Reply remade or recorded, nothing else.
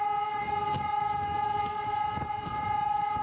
recorded